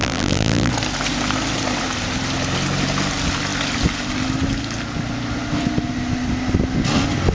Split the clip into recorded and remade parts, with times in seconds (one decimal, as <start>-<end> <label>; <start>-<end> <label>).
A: 0.0-0.7 remade; 0.7-7.3 recorded